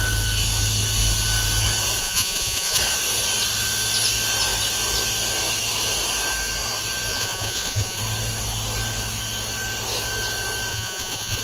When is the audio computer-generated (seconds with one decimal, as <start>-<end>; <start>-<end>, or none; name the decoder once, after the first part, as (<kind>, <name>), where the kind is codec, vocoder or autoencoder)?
2.0-2.8 (vocoder, Vocos); 7.1-8.0; 10.7-11.4